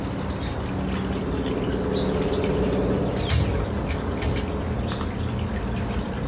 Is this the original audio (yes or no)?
yes